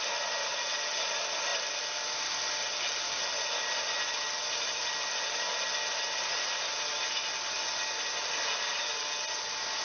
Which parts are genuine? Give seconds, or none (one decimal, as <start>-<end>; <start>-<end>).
0.0-9.8